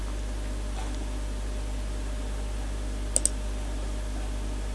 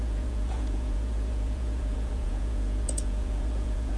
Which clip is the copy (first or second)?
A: second